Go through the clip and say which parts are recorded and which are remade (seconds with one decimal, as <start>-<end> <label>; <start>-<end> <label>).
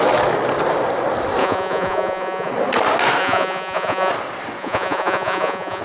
0.0-1.4 recorded; 1.4-2.5 remade; 2.5-3.2 recorded; 3.2-4.1 remade; 4.1-4.6 recorded; 4.6-5.8 remade